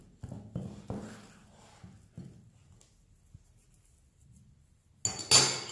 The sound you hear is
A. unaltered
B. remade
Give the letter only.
A